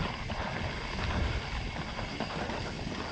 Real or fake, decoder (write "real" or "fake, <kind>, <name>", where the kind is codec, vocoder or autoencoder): real